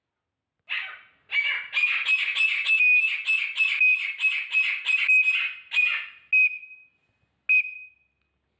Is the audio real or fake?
real